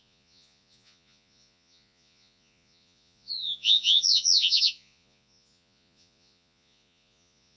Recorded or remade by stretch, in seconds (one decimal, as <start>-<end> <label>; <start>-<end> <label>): 0.0-7.6 remade

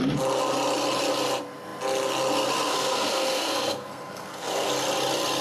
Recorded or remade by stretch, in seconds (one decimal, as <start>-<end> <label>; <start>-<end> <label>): 0.0-2.7 recorded; 2.7-4.7 remade; 4.7-5.4 recorded

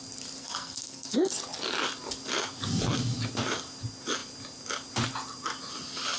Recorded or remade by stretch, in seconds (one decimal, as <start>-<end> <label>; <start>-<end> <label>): 0.0-0.4 recorded; 0.4-1.3 remade; 1.3-6.2 recorded

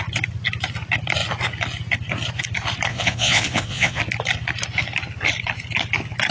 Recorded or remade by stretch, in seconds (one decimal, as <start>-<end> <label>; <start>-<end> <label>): 0.0-2.9 recorded; 2.9-4.0 remade; 4.0-6.3 recorded

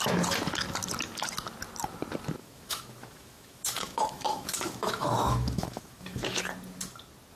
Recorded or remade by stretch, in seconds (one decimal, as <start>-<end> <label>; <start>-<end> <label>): 0.0-2.4 recorded; 2.4-6.4 remade; 6.4-7.4 recorded

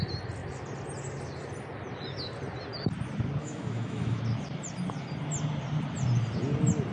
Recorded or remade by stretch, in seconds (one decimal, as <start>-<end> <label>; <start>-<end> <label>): 0.0-3.4 recorded; 3.4-4.2 remade; 4.2-6.9 recorded

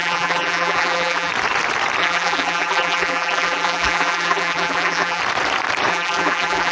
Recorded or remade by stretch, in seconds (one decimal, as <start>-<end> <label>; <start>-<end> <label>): 0.0-1.3 remade; 1.3-2.0 recorded; 2.0-5.2 remade; 5.2-5.9 recorded; 5.9-6.7 remade

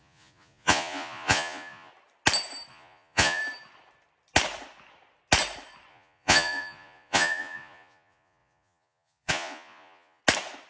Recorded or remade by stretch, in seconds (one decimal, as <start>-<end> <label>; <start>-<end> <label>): 0.0-1.9 remade; 1.9-2.7 recorded; 2.7-3.4 remade; 3.4-5.9 recorded; 5.9-10.2 remade; 10.2-10.7 recorded